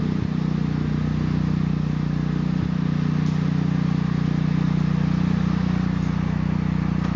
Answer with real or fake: real